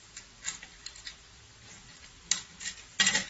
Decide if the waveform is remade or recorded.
recorded